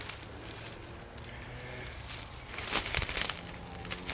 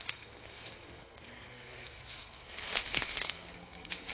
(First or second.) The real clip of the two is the first